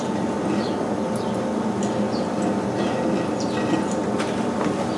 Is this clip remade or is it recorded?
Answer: recorded